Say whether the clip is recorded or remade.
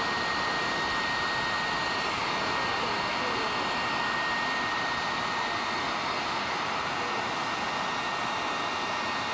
recorded